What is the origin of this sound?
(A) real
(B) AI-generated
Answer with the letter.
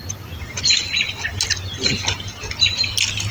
A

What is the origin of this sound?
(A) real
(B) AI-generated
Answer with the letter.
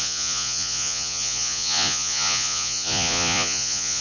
B